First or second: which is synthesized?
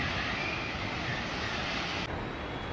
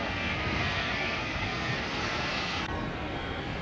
second